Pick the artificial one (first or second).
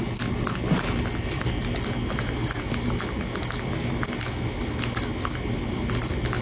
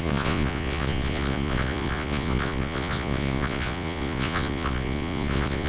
second